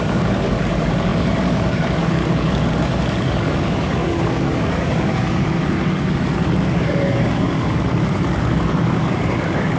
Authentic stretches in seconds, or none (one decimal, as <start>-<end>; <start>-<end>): none